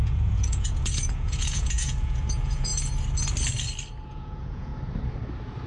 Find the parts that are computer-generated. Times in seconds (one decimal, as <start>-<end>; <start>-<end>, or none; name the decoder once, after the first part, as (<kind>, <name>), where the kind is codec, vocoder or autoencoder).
0.0-2.7 (vocoder, Vocos); 4.1-4.7